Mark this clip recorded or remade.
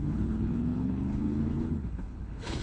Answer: remade